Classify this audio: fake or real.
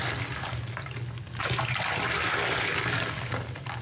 real